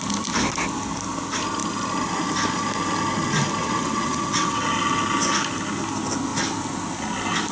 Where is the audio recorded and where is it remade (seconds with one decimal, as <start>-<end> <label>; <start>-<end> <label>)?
0.0-3.6 recorded; 3.6-4.6 remade; 4.6-7.5 recorded